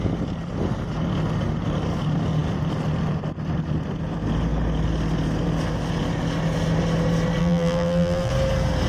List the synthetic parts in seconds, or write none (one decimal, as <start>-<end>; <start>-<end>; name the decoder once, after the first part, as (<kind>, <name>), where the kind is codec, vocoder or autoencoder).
7.4-8.3 (vocoder, BigVGAN v2)